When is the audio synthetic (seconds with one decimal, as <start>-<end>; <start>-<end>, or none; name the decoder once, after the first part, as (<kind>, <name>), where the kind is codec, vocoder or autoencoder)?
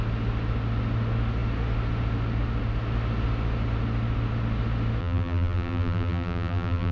5.0-6.9 (vocoder, BigVGAN v2)